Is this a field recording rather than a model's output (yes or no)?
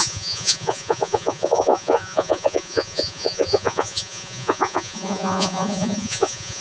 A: no